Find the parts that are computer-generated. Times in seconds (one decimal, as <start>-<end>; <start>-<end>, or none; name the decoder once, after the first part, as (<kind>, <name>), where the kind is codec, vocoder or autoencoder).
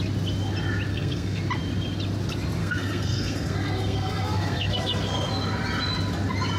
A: 0.9-1.4 (codec, SNAC); 2.6-5.3